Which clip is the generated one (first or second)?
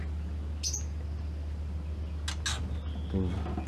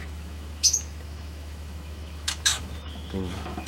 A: second